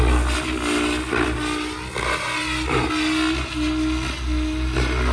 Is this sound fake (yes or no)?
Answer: no